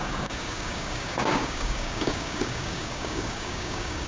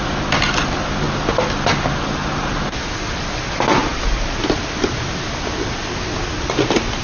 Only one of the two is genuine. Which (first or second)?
second